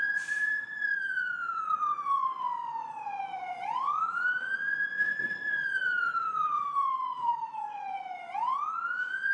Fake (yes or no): yes